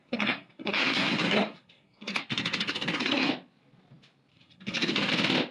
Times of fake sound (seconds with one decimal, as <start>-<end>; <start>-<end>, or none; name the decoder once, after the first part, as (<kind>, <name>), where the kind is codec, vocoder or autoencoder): 0.0-3.3 (codec, SNAC); 4.3-5.1